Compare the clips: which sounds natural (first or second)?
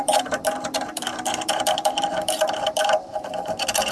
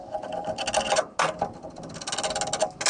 second